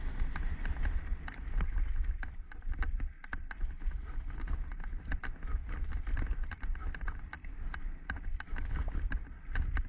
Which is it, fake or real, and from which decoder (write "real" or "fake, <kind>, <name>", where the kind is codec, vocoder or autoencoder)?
real